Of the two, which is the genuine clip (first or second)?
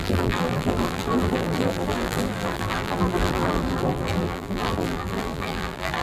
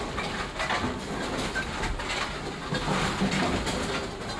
second